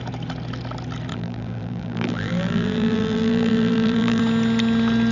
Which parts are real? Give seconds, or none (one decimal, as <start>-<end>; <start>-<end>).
0.0-1.1; 4.2-5.1